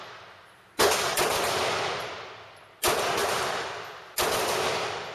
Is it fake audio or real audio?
real